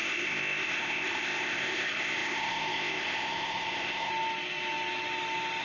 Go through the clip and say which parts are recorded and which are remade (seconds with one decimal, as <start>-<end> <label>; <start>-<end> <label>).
0.0-4.1 remade; 4.1-5.6 recorded